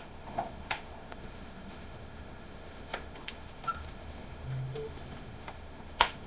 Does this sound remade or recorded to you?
remade